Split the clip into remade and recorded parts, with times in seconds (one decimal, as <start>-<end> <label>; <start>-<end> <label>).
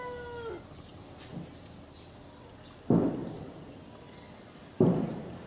0.0-4.6 recorded; 4.6-5.5 remade